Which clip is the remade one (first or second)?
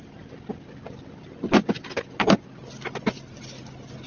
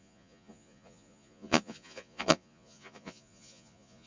second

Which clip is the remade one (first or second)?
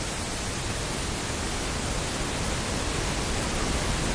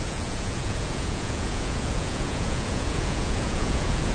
second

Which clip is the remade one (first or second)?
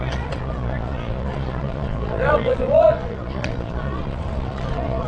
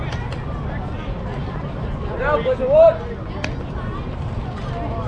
first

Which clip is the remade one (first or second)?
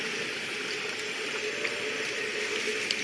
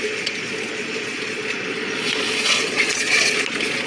second